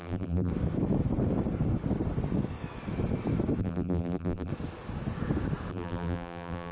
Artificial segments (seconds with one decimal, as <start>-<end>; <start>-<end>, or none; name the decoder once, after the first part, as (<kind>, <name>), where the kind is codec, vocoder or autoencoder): 0.0-0.5 (vocoder, BigVGAN v2); 3.6-4.5; 5.7-6.7